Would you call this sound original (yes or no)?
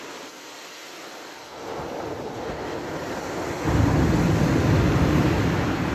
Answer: yes